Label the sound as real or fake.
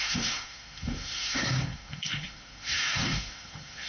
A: fake